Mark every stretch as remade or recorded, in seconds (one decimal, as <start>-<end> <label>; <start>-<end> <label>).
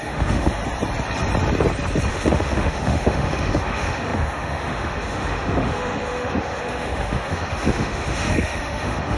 0.0-0.6 remade; 0.6-2.1 recorded; 2.1-9.2 remade